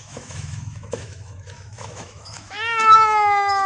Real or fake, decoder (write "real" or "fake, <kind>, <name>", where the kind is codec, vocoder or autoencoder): fake, autoencoder, DAC-VAE